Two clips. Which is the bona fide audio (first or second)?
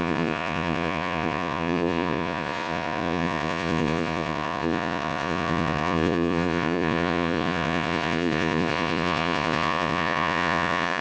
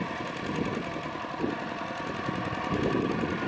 second